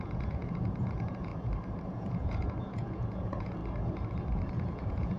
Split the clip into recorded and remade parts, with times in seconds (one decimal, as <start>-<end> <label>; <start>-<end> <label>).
0.0-1.3 remade; 1.3-1.9 recorded; 1.9-3.6 remade; 3.6-4.5 recorded; 4.5-5.2 remade

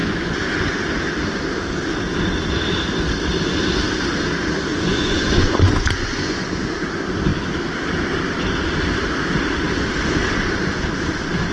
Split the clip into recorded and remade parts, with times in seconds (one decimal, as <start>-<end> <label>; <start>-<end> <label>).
0.0-0.7 remade; 0.7-4.7 recorded; 4.7-6.7 remade; 6.7-11.5 recorded

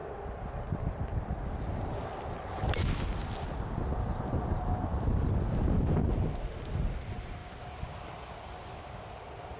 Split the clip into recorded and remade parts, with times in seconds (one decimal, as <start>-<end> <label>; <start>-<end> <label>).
0.0-9.6 recorded

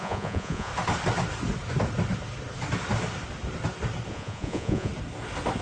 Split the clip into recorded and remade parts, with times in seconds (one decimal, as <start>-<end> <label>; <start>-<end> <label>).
0.0-0.7 remade; 0.7-4.1 recorded; 4.1-4.9 remade; 4.9-5.6 recorded

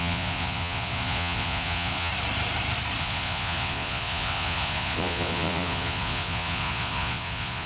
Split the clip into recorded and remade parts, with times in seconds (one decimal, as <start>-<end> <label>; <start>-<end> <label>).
0.0-2.1 remade; 2.1-3.0 recorded; 3.0-7.7 remade